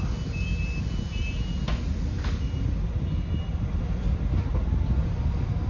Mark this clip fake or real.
real